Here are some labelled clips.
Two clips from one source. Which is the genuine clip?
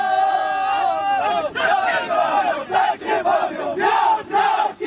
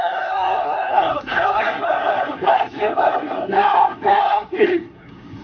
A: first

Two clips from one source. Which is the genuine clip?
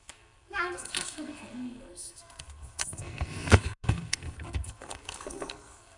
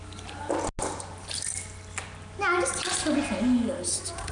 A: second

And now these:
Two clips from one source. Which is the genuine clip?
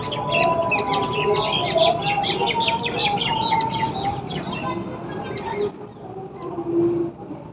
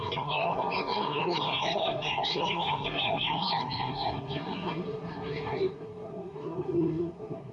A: first